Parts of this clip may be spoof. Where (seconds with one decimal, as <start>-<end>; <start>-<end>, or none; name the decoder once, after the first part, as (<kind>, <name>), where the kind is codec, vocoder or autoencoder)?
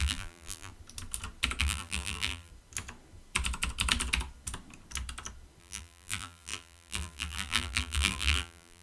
0.0-0.7 (vocoder, BigVGAN v2); 1.6-2.5; 5.6-8.8